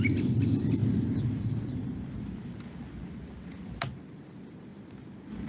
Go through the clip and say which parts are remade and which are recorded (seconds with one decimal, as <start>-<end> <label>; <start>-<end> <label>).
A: 0.0-0.8 remade; 0.8-4.1 recorded; 4.1-5.5 remade